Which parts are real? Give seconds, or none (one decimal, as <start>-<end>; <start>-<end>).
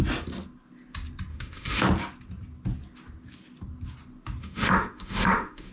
0.0-1.3; 1.8-4.4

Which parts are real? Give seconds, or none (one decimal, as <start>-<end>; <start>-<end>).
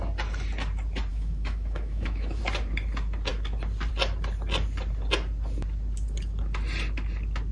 0.0-1.1; 2.4-7.5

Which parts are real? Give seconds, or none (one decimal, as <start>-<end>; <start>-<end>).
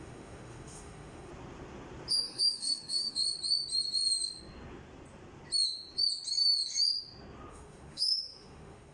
1.3-2.1; 3.2-7.5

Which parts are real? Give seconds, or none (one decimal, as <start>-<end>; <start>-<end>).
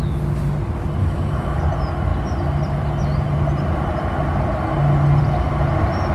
0.0-1.0; 1.6-6.1